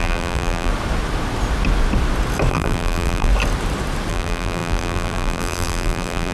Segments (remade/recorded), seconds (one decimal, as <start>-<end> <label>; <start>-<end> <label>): 0.0-0.7 remade; 0.7-2.5 recorded; 2.5-3.3 remade; 3.3-4.1 recorded; 4.1-6.3 remade

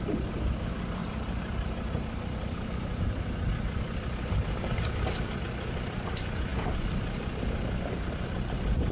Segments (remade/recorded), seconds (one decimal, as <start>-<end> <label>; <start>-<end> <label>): 0.0-1.0 recorded; 1.0-5.4 remade; 5.4-8.9 recorded

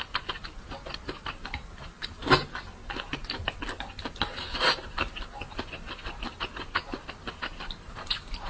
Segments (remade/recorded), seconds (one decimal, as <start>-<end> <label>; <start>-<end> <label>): 0.0-2.2 remade; 2.2-6.2 recorded; 6.2-8.5 remade